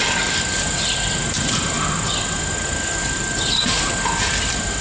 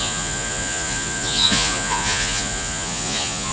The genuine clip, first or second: first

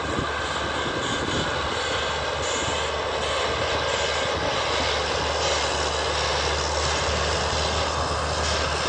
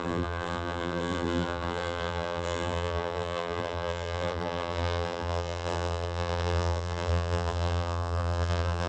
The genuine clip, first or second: first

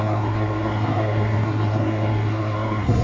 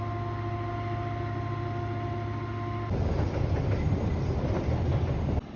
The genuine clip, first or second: second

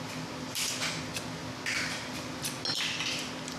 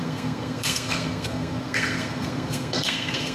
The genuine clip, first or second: first